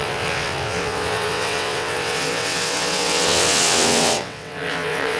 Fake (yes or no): yes